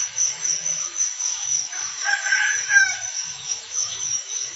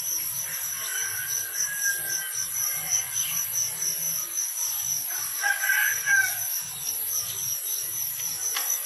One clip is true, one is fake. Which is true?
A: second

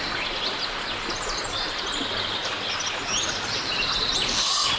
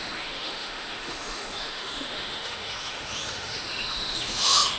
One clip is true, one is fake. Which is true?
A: first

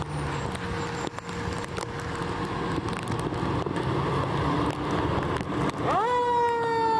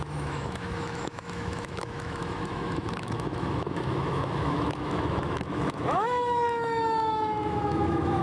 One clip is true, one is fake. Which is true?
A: first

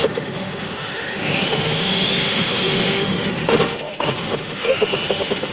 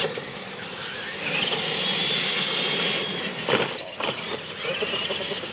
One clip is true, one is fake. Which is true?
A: second